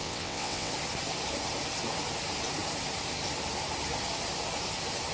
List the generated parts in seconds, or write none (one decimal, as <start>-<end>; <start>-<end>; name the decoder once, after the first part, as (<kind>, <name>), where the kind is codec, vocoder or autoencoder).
0.0-0.7 (vocoder, WaveNeXt)